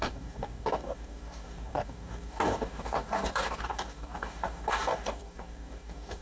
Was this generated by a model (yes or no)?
yes